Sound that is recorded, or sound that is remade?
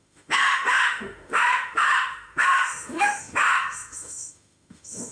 remade